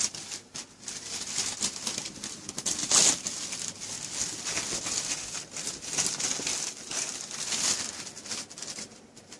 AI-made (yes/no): no